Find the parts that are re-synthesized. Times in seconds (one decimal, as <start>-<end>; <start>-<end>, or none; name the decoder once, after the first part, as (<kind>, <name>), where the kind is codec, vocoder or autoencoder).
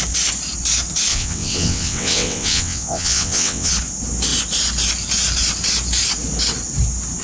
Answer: 1.1-3.7 (vocoder, WaveNeXt)